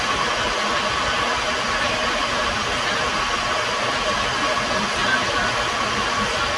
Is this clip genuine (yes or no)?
yes